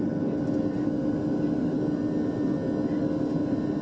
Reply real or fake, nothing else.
real